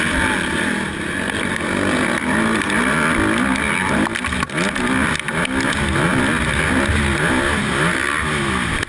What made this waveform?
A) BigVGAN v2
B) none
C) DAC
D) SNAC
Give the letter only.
B